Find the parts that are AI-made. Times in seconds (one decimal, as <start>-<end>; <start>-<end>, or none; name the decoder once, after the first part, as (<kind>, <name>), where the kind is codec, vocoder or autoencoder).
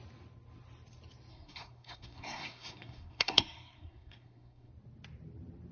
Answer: 1.3-4.7 (codec, SNAC)